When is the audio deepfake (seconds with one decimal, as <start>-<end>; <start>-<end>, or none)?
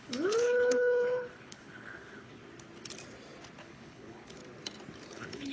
0.0-2.4; 3.6-4.4; 5.1-5.5